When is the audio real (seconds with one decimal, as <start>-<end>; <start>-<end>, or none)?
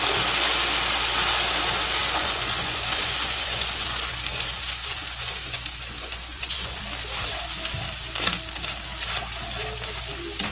0.0-2.0; 6.8-10.5